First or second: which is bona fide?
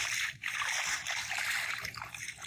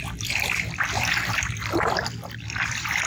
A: second